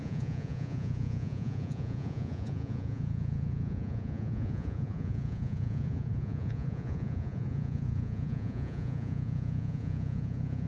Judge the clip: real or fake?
fake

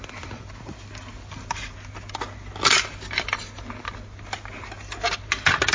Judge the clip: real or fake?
real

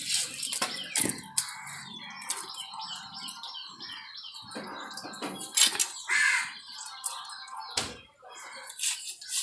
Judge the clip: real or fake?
real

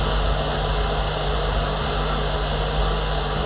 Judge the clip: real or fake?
real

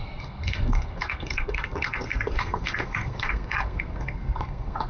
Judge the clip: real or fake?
fake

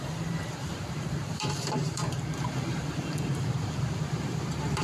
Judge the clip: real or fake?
fake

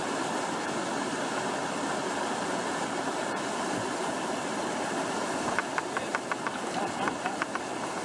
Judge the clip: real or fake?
real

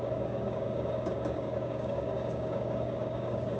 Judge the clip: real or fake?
fake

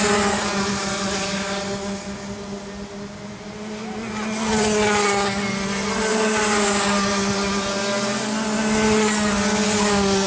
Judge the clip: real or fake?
real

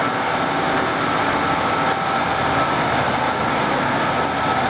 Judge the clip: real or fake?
real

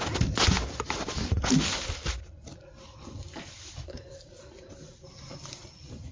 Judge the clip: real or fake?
real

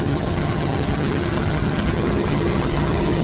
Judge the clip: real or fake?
fake